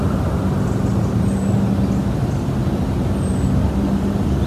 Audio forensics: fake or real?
real